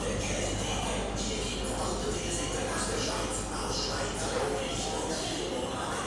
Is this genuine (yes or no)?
yes